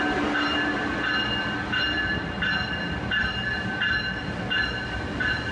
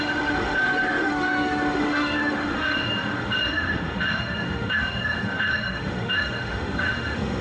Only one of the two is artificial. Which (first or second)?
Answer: second